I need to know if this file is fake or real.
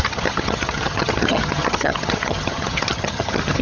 fake